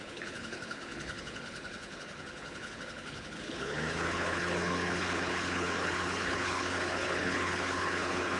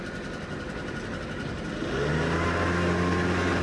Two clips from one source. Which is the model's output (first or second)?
first